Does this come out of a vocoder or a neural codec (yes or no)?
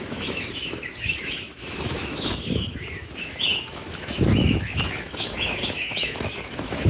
yes